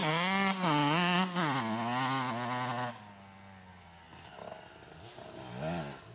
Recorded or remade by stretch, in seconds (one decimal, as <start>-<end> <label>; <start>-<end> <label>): 0.0-6.1 recorded